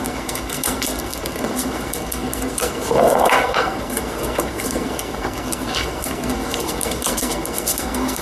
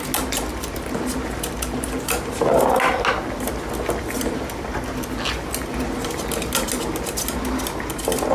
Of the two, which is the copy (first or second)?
first